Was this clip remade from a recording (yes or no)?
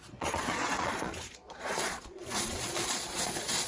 yes